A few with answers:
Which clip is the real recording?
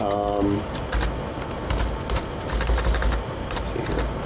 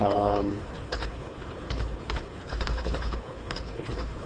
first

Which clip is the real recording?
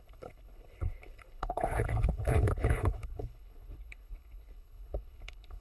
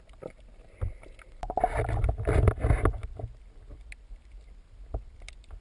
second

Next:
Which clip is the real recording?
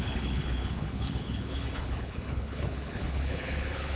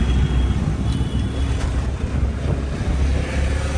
second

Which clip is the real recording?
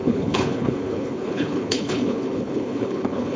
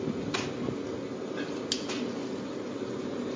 second